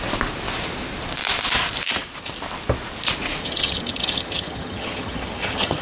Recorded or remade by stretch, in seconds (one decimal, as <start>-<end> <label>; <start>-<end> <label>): 0.0-3.4 recorded; 3.4-5.8 remade